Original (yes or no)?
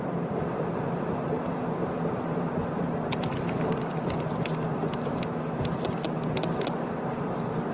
yes